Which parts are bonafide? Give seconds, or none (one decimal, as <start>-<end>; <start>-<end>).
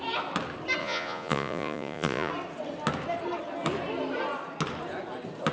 0.0-0.8; 2.3-5.5